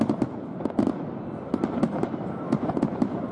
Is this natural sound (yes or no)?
no